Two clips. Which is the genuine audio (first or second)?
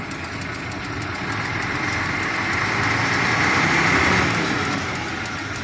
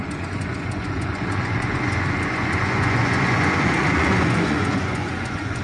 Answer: first